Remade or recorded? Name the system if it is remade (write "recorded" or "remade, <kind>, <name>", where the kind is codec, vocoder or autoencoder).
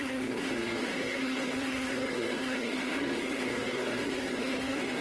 remade, codec, SNAC